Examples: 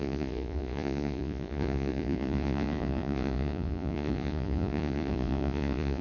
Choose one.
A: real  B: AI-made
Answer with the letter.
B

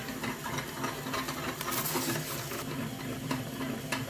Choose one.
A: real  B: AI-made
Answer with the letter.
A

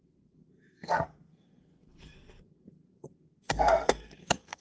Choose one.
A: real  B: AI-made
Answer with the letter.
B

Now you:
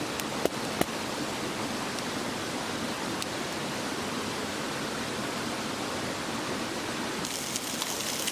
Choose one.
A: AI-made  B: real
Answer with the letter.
B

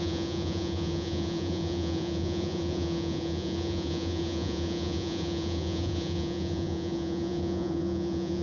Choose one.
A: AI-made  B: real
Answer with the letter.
A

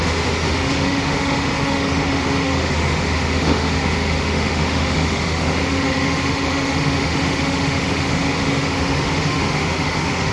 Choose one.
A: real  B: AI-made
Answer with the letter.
B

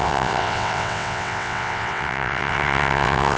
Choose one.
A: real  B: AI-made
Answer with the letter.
B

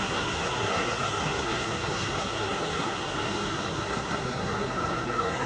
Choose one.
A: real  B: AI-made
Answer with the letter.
B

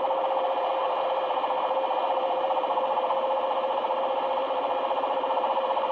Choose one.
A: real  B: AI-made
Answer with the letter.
A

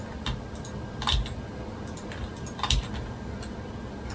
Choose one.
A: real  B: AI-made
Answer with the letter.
A